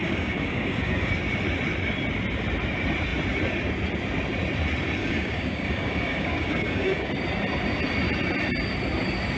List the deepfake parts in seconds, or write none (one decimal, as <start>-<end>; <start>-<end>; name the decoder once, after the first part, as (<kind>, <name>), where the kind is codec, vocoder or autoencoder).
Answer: 0.0-1.1 (codec, DAC); 5.0-7.1